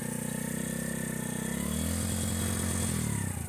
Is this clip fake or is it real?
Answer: real